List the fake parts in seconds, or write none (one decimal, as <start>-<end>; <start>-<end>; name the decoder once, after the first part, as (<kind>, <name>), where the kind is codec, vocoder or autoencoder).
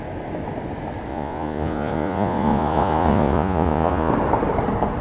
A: 1.1-4.1 (vocoder, Vocos)